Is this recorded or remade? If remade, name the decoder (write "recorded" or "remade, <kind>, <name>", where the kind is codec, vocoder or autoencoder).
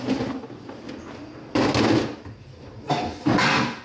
recorded